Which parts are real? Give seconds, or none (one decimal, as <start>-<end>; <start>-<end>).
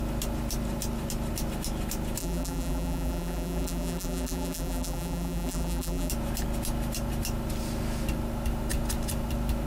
0.0-2.2; 6.1-9.7